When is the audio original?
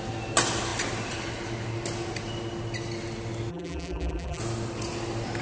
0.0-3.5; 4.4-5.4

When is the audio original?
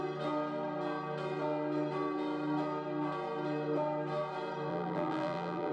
0.0-4.7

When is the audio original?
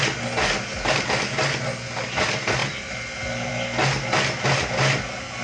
0.0-2.6; 3.5-5.4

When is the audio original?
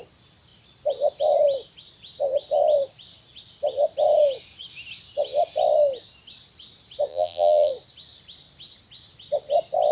0.0-7.1; 7.7-9.9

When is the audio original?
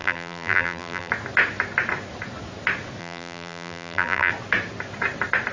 1.1-3.0; 4.3-5.5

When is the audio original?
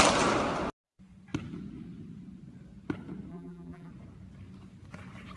0.0-3.3; 3.9-5.4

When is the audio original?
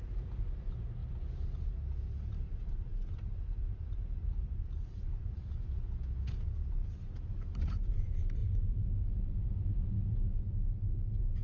6.8-7.3; 8.4-11.4